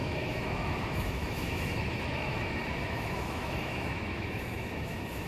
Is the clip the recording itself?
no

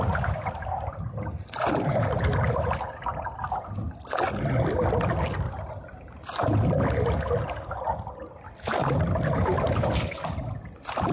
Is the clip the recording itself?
yes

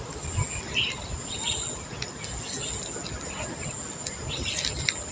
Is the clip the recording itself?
yes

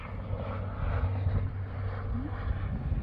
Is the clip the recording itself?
yes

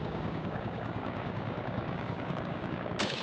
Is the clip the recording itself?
no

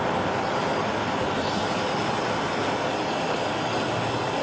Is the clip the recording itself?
no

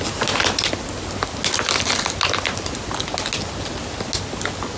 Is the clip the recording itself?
yes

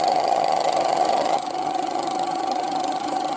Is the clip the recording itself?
no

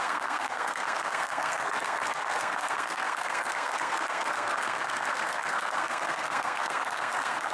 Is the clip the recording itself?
no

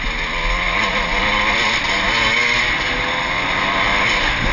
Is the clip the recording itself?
yes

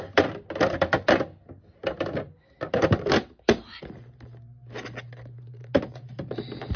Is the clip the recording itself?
yes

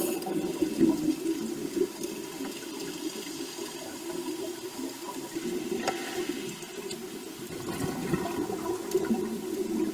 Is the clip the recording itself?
yes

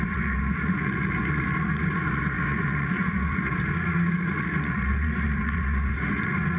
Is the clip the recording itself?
no